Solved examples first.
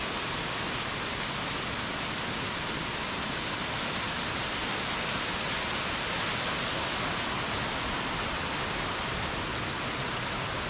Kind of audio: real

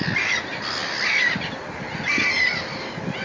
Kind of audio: real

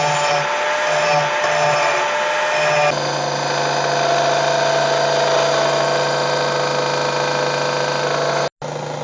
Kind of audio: real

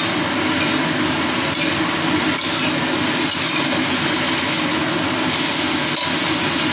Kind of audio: real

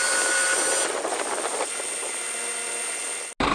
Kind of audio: real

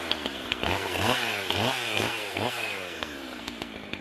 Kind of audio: fake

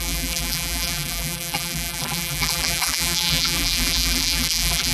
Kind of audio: fake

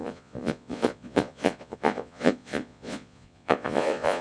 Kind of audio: fake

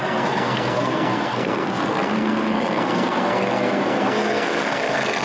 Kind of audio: fake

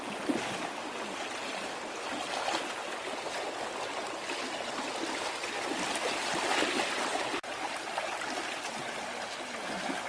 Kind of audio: real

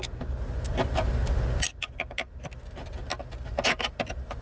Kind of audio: real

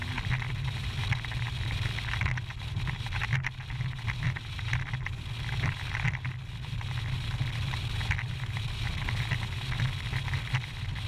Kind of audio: real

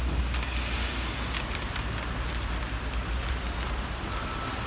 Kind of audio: real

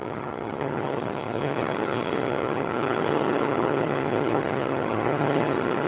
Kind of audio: fake